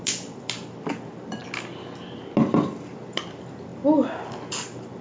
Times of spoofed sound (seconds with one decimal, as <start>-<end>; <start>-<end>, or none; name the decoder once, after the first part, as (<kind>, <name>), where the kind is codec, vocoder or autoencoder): 0.0-1.4 (vocoder, BigVGAN v2); 2.5-3.7; 4.5-5.0